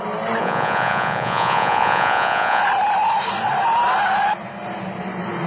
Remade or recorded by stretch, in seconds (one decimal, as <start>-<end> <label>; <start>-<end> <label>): 0.0-0.4 recorded; 0.4-2.6 remade; 2.6-5.5 recorded